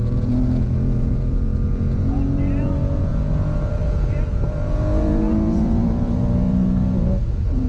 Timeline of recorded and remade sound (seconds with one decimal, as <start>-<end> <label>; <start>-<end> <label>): 0.0-7.7 remade